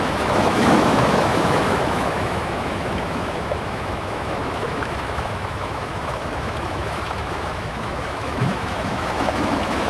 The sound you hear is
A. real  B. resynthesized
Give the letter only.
B